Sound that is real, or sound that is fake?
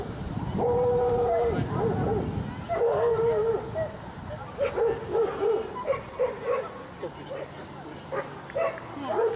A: real